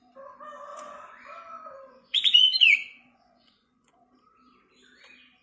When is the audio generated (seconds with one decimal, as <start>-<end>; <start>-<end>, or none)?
0.7-3.9